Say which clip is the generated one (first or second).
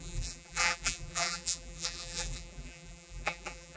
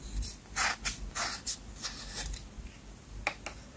first